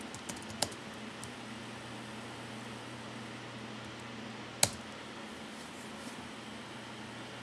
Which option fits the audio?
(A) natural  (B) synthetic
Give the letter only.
A